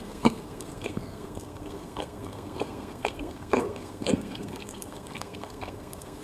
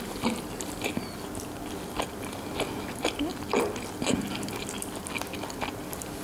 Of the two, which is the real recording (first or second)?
second